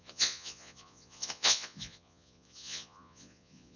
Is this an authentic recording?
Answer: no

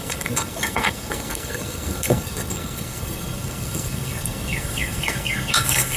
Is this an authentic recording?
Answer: no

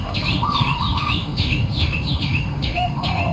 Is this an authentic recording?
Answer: no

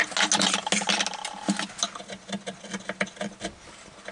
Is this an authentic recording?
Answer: yes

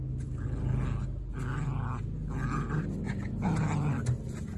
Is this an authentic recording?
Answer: yes